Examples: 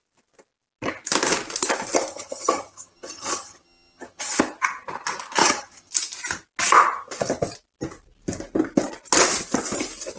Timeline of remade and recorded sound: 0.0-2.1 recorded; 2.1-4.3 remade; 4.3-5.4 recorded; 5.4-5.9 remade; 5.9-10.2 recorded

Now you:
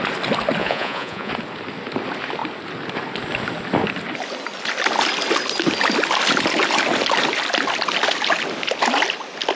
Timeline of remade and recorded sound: 0.0-0.6 recorded; 0.6-1.3 remade; 1.3-9.6 recorded

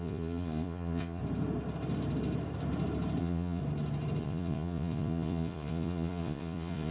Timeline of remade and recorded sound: 0.0-1.2 remade; 1.2-3.2 recorded; 3.2-3.6 remade; 3.6-4.2 recorded; 4.2-6.9 remade

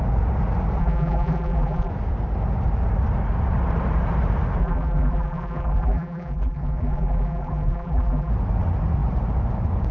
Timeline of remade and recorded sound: 0.0-0.8 recorded; 0.8-1.9 remade; 1.9-4.6 recorded; 4.6-8.3 remade; 8.3-9.9 recorded

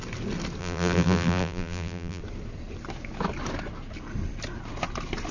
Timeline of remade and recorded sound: 0.0-0.6 recorded; 0.6-2.2 remade; 2.2-5.3 recorded

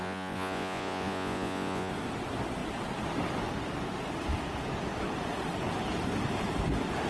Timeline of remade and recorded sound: 0.0-1.9 remade; 1.9-7.1 recorded

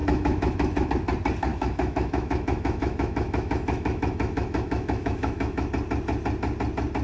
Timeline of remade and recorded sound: 0.0-0.9 remade; 0.9-1.5 recorded; 1.5-5.7 remade; 5.7-7.0 recorded